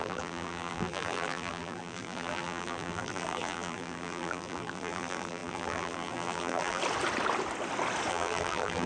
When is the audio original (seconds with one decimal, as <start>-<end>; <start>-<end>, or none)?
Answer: 6.8-8.1